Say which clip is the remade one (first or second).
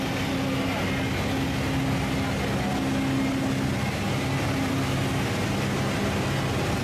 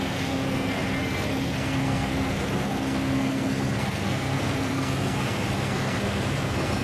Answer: second